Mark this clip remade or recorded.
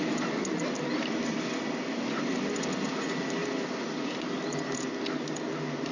recorded